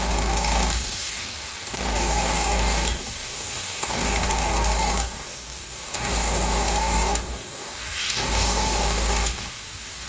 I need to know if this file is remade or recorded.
remade